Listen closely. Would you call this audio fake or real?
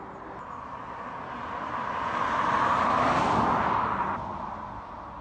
real